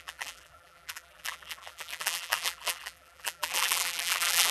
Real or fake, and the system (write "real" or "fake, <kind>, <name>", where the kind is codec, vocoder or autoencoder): fake, vocoder, BigVGAN v2